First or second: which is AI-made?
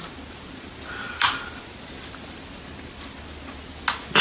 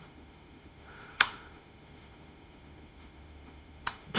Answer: second